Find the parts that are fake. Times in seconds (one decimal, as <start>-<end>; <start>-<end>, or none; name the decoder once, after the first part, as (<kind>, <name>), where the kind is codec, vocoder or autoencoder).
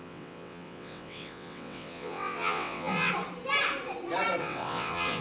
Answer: 0.0-3.1 (vocoder, WaveNeXt); 4.4-5.2